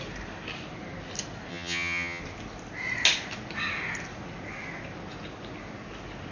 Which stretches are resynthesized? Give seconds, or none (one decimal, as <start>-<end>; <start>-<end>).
1.5-2.2